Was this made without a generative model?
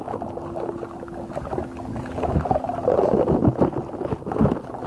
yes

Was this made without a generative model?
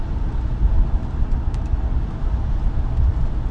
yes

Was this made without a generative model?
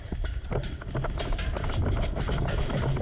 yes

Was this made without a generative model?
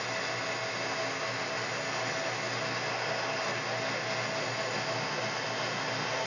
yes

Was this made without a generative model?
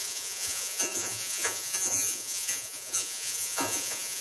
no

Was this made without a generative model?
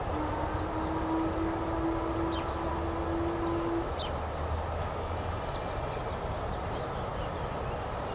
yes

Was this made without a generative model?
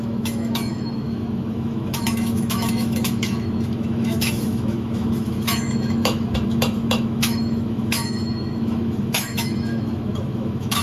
no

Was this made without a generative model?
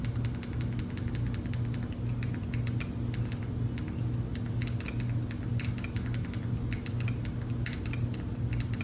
yes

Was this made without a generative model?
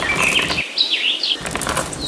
yes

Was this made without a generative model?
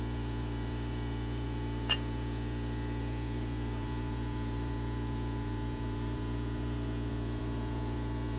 no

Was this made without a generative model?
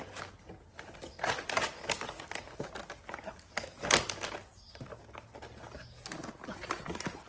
yes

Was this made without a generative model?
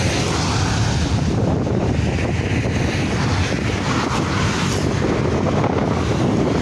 yes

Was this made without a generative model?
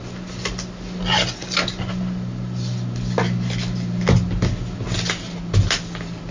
yes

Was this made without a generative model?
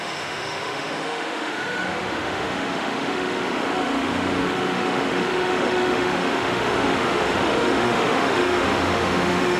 no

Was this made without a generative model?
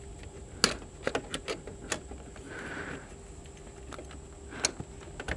yes